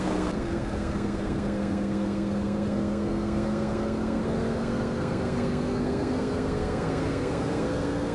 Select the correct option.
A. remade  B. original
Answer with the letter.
A